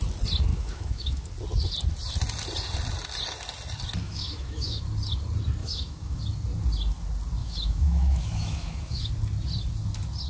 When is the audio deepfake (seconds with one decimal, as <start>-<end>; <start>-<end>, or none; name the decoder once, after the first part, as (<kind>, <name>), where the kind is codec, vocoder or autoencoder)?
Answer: 0.5-1.3 (autoencoder, DAC-VAE); 4.0-4.8; 5.6-6.2; 7.4-9.1